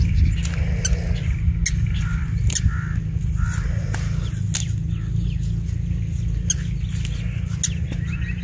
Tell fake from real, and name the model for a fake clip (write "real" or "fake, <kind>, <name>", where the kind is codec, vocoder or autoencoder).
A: real